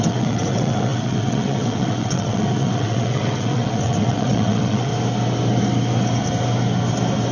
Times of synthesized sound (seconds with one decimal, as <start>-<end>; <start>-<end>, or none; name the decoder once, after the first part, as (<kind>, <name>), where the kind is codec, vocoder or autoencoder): 0.0-4.9 (vocoder, WaveNeXt)